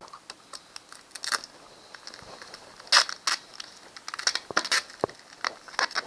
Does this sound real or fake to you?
real